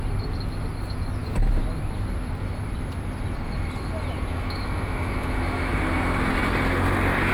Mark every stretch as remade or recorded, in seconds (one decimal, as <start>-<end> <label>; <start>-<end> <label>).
0.0-4.3 recorded; 4.3-5.7 remade; 5.7-7.3 recorded